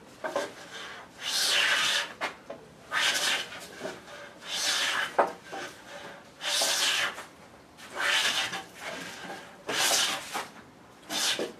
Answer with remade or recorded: remade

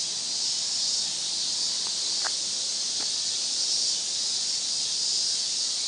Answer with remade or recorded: remade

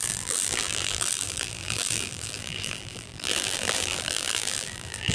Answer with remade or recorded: remade